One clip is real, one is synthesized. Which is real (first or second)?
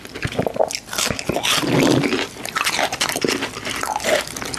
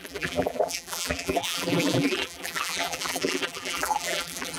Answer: first